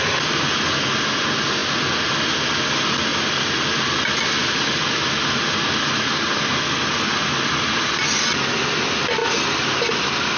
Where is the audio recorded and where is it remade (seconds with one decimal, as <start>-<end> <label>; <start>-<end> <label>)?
0.0-10.4 recorded